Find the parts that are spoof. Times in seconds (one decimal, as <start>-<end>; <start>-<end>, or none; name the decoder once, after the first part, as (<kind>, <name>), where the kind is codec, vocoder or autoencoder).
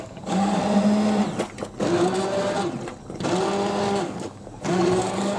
0.0-0.6 (codec, DAC); 3.8-5.4